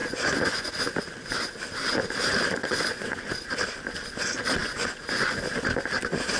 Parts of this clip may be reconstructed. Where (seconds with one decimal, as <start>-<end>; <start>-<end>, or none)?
0.0-0.7; 2.6-3.3; 4.6-5.4